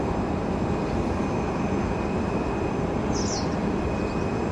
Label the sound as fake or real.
real